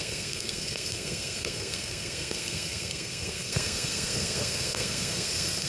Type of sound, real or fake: fake